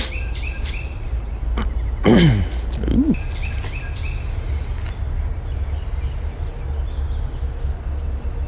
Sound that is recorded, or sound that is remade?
recorded